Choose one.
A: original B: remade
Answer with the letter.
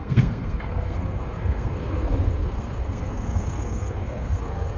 B